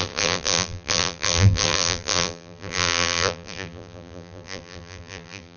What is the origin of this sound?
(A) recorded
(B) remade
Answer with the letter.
B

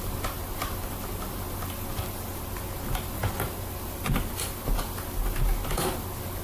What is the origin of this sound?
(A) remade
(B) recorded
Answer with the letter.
B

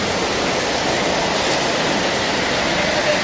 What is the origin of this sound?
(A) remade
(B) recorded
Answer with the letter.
B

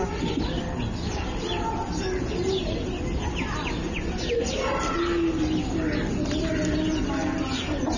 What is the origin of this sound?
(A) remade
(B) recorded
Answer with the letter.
B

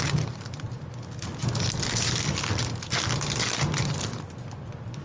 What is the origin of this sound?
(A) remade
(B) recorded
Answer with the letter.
B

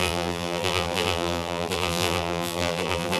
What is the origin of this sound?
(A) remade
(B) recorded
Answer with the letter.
A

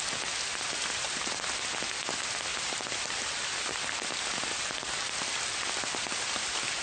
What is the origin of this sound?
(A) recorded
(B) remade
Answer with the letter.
B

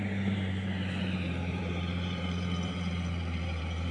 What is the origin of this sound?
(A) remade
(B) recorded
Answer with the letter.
A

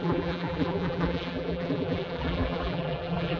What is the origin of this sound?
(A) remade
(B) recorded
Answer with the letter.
A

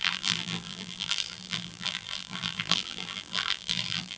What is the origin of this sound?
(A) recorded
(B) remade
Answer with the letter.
B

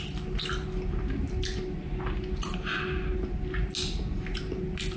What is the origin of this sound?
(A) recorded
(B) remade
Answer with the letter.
A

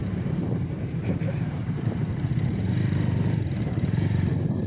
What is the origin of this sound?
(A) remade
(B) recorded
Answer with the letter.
A